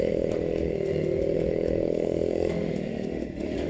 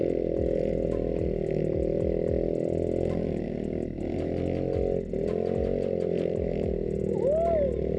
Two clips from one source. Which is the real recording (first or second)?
second